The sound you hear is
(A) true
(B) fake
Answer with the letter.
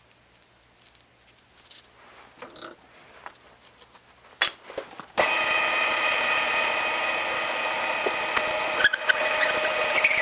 A